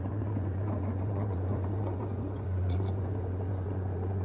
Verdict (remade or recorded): remade